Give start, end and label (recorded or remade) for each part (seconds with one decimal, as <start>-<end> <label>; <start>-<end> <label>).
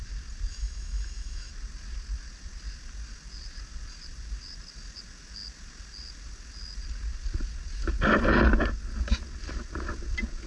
0.0-0.5 recorded; 0.5-1.5 remade; 1.5-10.5 recorded